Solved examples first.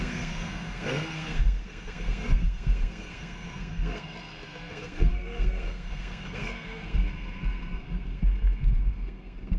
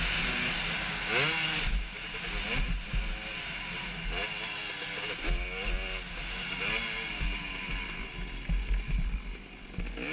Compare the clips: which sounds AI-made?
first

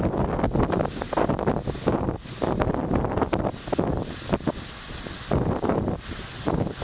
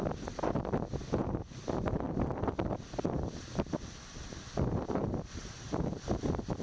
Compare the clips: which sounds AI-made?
second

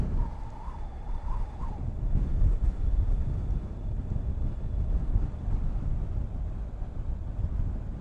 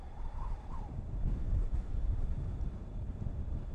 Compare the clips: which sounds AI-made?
second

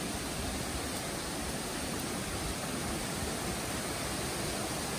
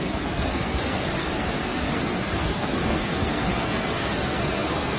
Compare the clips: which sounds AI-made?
second